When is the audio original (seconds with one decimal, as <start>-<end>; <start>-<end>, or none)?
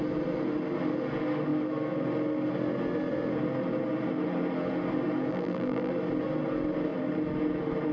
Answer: 0.0-5.3; 5.9-7.9